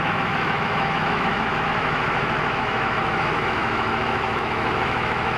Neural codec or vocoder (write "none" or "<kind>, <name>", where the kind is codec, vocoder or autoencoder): autoencoder, DAC-VAE